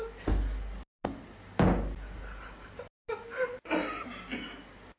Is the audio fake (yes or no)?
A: no